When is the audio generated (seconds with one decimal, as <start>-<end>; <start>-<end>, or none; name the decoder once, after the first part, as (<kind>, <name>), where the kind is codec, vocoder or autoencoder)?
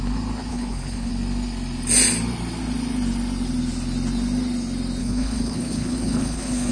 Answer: 0.5-1.1 (codec, HILCodec); 5.0-6.7